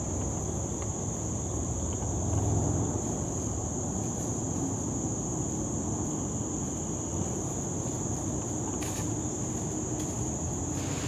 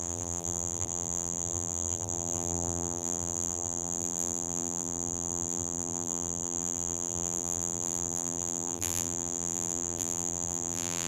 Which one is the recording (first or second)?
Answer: first